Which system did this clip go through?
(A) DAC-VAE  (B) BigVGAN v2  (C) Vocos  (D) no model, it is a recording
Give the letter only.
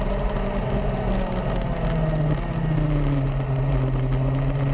D